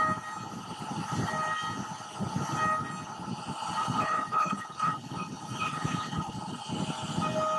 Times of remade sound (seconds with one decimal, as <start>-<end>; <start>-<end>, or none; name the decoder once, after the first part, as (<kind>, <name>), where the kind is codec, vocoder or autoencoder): 3.8-6.7 (codec, HILCodec)